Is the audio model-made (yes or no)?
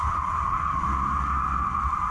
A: no